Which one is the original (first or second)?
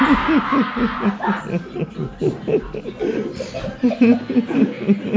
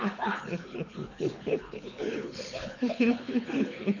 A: first